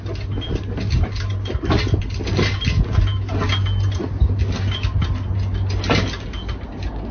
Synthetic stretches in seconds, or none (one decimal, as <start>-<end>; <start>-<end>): none